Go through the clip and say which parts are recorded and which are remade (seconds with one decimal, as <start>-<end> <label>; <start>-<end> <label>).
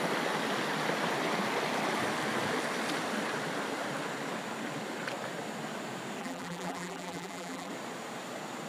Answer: 0.0-6.2 recorded; 6.2-7.7 remade; 7.7-8.7 recorded